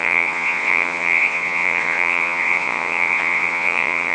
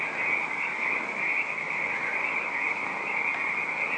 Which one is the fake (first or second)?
first